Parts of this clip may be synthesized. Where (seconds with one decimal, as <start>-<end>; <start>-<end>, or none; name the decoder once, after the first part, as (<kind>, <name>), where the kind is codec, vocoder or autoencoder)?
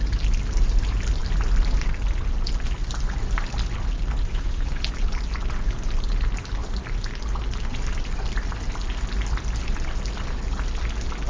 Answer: 4.3-4.8 (autoencoder, DAC-VAE)